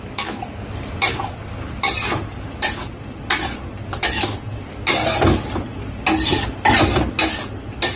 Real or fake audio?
real